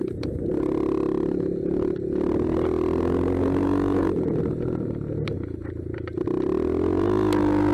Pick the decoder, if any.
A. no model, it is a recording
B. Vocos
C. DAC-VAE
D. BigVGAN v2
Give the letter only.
A